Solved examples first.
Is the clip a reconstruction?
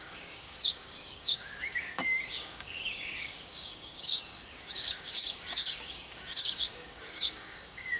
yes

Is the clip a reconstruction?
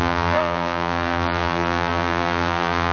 yes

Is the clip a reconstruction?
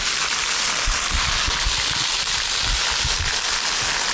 no